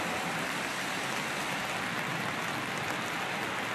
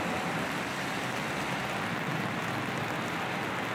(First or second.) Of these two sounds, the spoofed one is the first